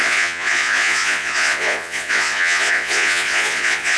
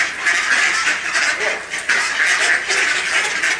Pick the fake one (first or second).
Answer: first